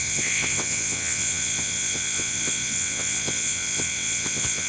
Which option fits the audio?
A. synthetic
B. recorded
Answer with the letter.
A